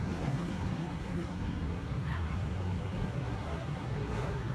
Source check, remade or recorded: remade